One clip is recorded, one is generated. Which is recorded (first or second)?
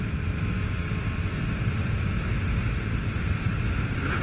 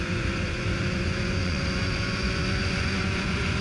first